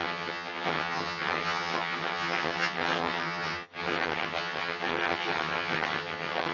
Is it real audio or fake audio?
fake